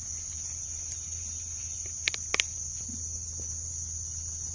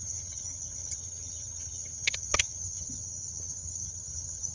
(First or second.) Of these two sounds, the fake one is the second